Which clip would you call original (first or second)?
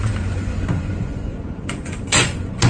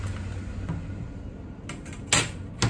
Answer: second